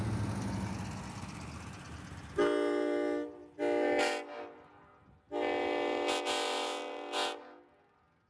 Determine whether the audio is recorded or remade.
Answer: recorded